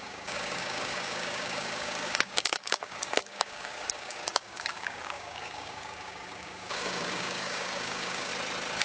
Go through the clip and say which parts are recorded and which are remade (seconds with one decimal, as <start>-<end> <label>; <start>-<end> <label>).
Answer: 0.0-8.3 remade; 8.3-8.8 recorded